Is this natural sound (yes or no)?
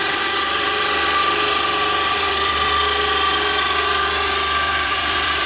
no